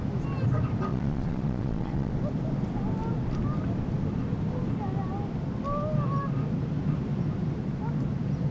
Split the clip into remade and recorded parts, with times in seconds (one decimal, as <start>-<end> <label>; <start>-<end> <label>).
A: 0.0-0.9 recorded; 0.9-2.1 remade; 2.1-8.5 recorded